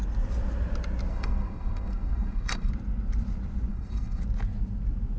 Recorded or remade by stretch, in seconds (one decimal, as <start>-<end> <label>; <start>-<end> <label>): 0.0-1.1 recorded; 1.1-2.7 remade; 2.7-3.7 recorded; 3.7-4.2 remade; 4.2-5.2 recorded